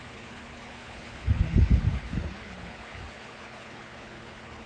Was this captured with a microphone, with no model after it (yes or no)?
no